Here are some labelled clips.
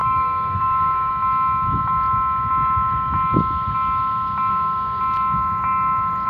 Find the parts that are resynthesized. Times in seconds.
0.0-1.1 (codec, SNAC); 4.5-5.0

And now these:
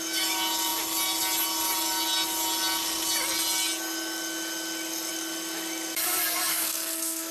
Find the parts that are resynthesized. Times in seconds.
6.5-7.3 (codec, SNAC)

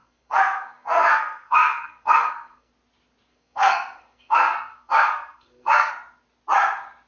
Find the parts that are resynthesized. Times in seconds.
0.0-2.7 (codec, SNAC); 3.3-5.9